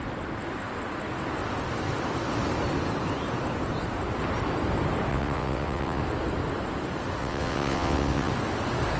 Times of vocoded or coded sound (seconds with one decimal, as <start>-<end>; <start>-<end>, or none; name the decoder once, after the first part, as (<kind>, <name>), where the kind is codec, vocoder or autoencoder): 5.1-6.0 (vocoder, WaveNeXt); 7.2-8.3